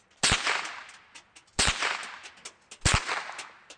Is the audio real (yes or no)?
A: yes